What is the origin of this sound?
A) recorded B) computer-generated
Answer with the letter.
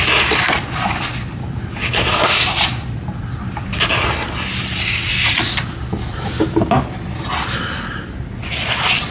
A